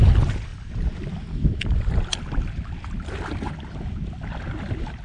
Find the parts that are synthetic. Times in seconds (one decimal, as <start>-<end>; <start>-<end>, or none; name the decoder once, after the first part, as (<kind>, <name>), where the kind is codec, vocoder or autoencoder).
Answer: none